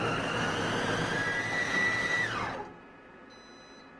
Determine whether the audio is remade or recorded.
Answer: recorded